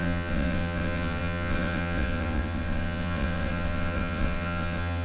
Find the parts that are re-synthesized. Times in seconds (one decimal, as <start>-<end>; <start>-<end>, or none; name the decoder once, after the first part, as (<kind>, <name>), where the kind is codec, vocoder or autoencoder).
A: 0.0-5.0 (vocoder, WaveNeXt)